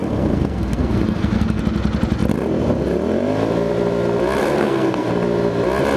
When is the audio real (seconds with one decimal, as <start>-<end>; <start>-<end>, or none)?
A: 1.6-4.4; 5.1-6.0